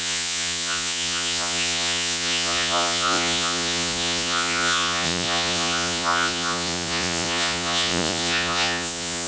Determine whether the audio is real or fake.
fake